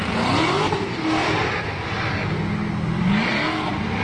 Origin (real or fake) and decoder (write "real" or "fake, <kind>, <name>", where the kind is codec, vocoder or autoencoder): real